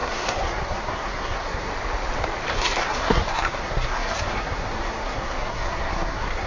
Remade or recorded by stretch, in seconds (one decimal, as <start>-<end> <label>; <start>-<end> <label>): 0.0-1.7 remade; 1.7-2.5 recorded; 2.5-6.5 remade